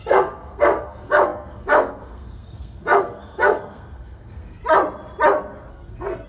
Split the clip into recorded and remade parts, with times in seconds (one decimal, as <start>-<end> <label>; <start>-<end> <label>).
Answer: 0.0-4.6 remade; 4.6-5.7 recorded; 5.7-6.3 remade